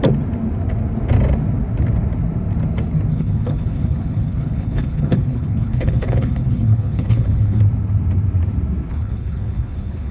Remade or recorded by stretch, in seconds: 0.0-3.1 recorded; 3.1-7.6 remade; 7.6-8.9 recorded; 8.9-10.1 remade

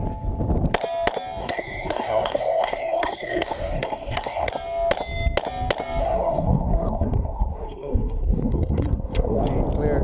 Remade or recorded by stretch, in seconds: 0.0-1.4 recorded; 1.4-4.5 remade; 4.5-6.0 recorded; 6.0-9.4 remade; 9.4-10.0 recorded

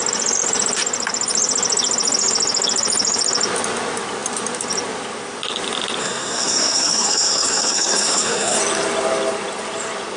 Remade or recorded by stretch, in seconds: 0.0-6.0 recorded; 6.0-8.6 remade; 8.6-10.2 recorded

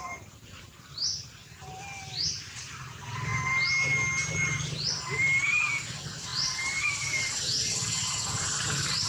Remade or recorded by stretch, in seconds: 0.0-1.4 remade; 1.4-2.5 recorded; 2.5-3.3 remade; 3.3-4.3 recorded; 4.3-9.1 remade